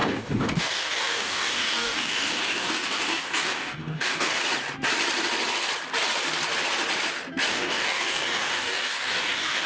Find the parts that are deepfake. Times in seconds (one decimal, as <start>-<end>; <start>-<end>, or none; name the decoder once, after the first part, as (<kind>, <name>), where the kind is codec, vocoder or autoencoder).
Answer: 0.0-4.4 (codec, DAC); 7.5-9.7